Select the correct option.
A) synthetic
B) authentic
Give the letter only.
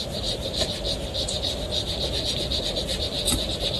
B